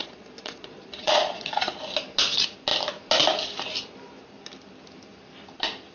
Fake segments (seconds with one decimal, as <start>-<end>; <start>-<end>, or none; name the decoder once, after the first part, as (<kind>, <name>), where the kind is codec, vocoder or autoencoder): 0.0-1.6 (vocoder, Vocos)